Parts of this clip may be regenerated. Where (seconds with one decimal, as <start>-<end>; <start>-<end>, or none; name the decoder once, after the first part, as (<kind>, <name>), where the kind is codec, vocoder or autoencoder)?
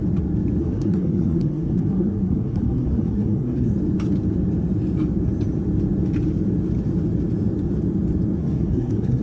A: 0.6-3.7 (codec, SNAC); 8.4-9.2